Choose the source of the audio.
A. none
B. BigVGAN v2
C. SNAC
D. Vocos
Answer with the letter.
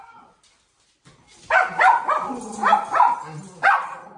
A